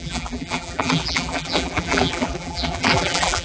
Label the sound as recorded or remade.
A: remade